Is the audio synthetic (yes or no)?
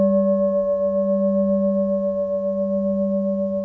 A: no